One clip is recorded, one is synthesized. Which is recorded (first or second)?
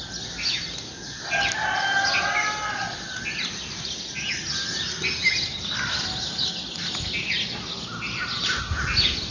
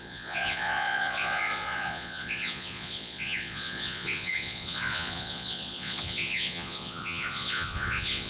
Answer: first